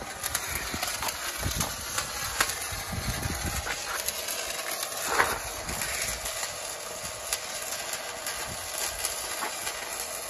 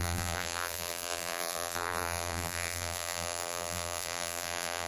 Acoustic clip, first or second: first